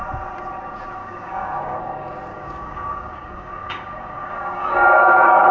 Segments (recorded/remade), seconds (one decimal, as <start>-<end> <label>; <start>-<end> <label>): 0.0-1.0 recorded; 1.0-1.8 remade; 1.8-2.3 recorded; 2.3-5.5 remade